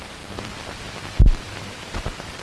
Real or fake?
fake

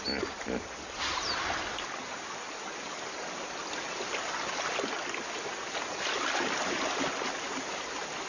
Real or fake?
real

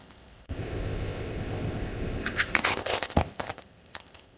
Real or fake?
fake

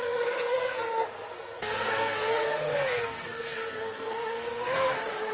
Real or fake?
fake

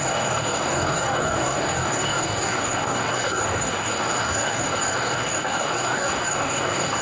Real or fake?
fake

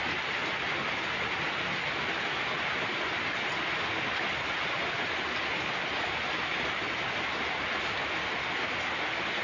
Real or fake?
real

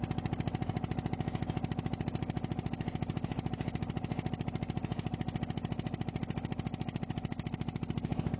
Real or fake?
real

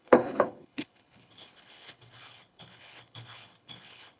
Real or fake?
fake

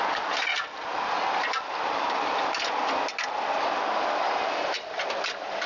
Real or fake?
real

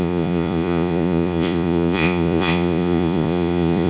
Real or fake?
fake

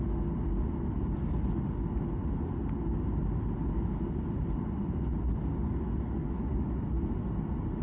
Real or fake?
real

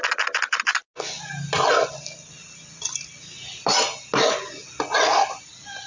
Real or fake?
real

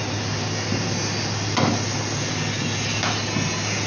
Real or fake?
real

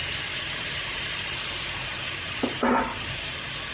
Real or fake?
fake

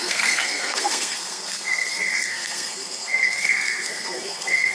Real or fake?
fake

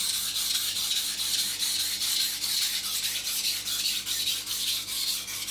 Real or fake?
real